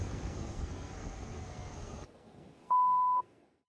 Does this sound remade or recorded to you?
remade